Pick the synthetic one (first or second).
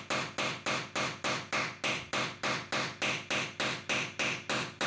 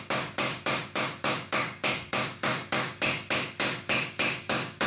second